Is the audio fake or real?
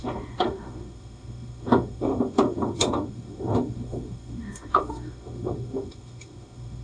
fake